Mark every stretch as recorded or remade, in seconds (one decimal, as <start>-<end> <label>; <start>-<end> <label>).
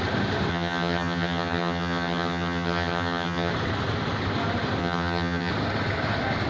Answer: 0.0-0.5 recorded; 0.5-3.5 remade; 3.5-4.8 recorded; 4.8-5.5 remade; 5.5-6.5 recorded